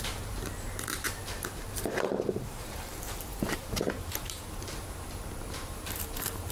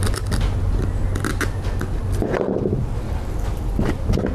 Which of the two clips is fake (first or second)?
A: first